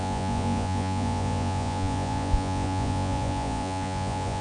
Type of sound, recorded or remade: remade